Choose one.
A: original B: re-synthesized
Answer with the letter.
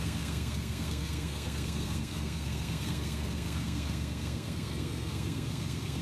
B